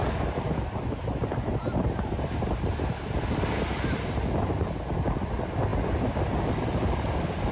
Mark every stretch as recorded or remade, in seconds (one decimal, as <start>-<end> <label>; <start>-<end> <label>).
0.0-7.5 recorded